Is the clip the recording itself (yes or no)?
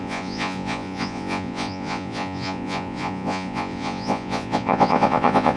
no